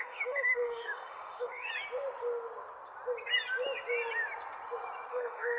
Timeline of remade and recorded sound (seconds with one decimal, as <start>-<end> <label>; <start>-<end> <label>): 0.0-1.7 remade; 1.7-5.1 recorded; 5.1-5.6 remade